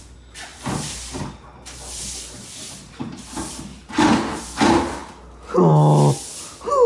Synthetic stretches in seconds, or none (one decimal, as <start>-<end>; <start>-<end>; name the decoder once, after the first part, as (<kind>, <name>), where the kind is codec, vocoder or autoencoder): 0.5-2.9 (vocoder, BigVGAN v2); 3.7-4.4